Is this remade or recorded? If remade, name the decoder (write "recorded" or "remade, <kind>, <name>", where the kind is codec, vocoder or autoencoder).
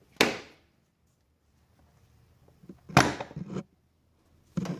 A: recorded